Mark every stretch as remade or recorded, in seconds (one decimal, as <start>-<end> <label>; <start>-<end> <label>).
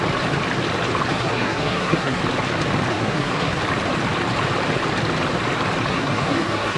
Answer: 0.0-1.1 recorded; 1.1-2.2 remade; 2.2-2.9 recorded; 2.9-3.6 remade; 3.6-5.9 recorded; 5.9-6.8 remade